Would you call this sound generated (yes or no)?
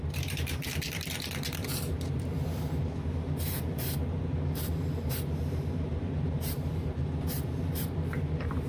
yes